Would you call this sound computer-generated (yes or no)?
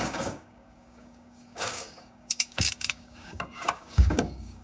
yes